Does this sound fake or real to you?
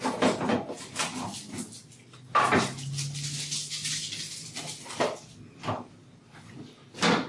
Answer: real